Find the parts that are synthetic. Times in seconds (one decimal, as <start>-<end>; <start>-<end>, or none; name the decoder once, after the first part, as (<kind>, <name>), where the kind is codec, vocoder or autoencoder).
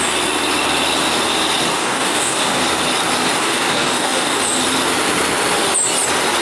1.8-2.6 (codec, DAC); 3.4-4.4